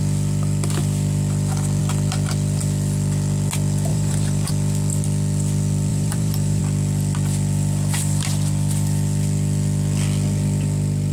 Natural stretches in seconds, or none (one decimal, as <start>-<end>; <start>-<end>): 0.0-3.9; 4.5-5.9; 6.6-11.1